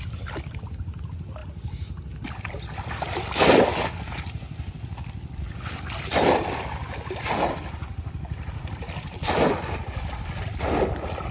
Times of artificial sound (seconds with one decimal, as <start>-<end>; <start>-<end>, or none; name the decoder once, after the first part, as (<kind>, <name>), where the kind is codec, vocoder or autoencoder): none

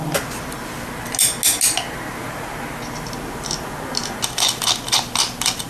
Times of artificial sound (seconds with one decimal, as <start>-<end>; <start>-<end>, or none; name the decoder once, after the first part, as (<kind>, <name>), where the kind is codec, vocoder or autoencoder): none

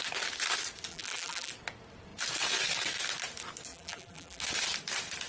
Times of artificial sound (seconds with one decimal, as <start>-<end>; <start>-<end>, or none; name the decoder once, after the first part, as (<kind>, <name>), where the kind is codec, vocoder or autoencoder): 0.9-1.5 (vocoder, BigVGAN v2); 3.7-4.4

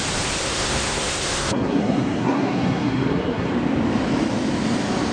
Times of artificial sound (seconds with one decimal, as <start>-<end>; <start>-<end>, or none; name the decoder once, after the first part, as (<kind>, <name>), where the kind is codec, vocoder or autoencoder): 0.4-3.5 (codec, SNAC)